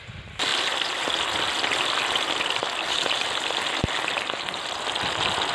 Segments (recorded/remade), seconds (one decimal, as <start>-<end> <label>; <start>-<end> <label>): 0.0-5.5 recorded